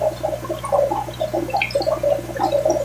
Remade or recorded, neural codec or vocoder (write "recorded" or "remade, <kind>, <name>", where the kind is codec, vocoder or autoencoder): recorded